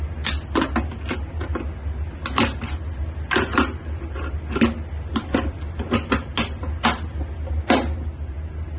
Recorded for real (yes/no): yes